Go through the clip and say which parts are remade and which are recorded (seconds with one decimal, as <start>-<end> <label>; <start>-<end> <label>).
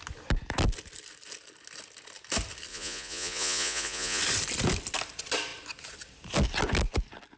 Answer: 0.0-2.7 recorded; 2.7-4.2 remade; 4.2-7.4 recorded